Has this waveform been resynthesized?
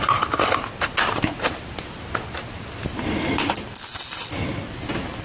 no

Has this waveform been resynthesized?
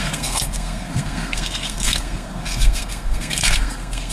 yes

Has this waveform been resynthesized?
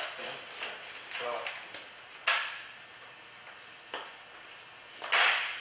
no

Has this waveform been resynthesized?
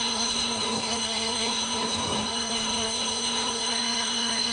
yes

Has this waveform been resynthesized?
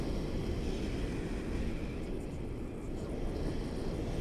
no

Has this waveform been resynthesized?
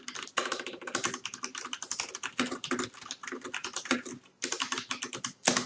no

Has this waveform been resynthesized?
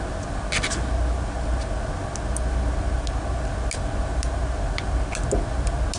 no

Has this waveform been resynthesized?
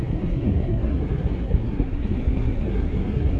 yes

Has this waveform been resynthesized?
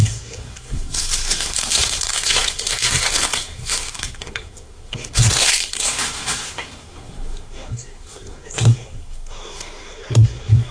yes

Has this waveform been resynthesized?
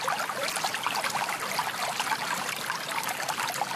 no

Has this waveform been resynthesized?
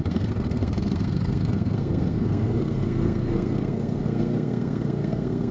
yes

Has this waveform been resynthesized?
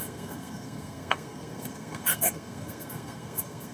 yes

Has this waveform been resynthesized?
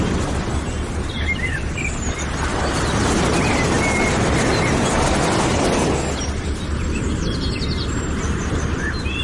no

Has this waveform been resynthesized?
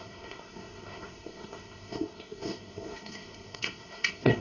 yes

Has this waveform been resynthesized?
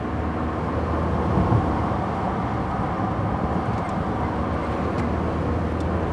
no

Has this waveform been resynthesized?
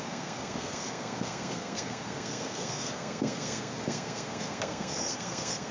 yes